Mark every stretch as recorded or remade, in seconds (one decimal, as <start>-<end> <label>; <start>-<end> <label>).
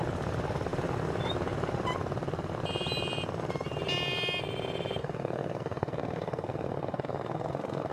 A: 0.0-5.0 recorded; 5.0-7.9 remade